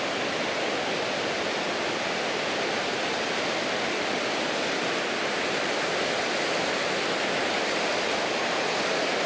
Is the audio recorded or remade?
recorded